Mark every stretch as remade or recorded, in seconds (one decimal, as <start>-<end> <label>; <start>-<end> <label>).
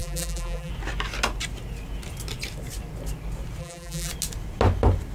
0.0-0.7 remade; 0.7-3.6 recorded; 3.6-4.1 remade; 4.1-5.1 recorded